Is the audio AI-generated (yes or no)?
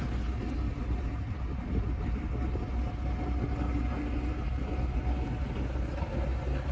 no